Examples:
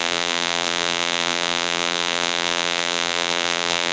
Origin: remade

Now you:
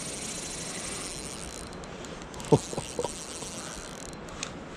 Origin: recorded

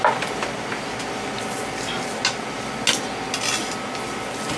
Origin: recorded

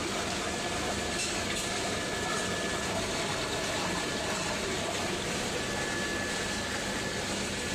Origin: recorded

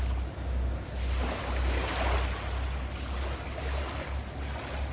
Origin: recorded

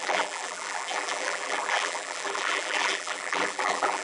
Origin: remade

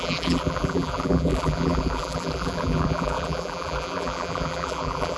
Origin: remade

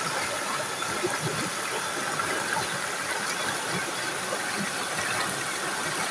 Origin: recorded